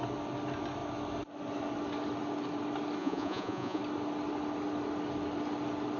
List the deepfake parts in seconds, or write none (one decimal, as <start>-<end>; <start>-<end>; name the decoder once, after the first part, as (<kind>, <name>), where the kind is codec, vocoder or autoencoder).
3.0-3.8 (vocoder, Vocos)